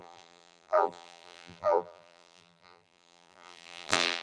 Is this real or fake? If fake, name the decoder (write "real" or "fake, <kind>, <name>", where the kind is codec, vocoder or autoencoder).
fake, vocoder, BigVGAN v2